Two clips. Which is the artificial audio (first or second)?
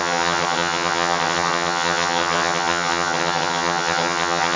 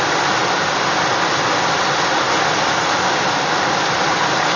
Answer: first